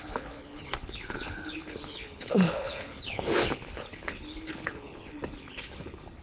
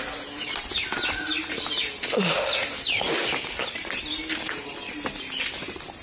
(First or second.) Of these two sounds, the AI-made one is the first